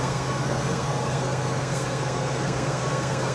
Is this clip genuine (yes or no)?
no